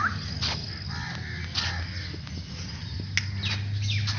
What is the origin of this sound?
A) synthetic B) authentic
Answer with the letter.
B